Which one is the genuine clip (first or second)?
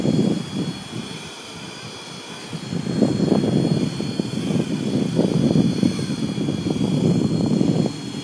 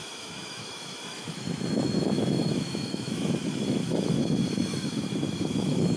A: first